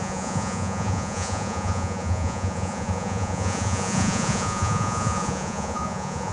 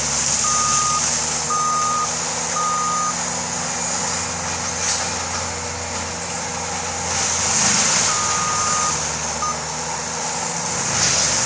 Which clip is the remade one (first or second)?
first